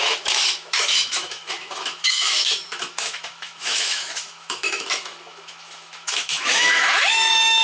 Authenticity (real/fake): fake